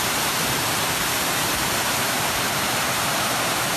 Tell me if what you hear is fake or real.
fake